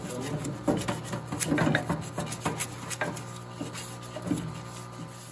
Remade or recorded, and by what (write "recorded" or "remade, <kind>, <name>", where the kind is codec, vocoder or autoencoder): recorded